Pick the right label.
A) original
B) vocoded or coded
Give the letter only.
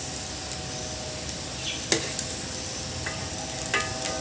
A